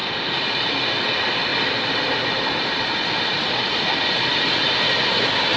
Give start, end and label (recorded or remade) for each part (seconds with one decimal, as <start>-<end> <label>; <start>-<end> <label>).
0.0-0.7 remade; 0.7-5.6 recorded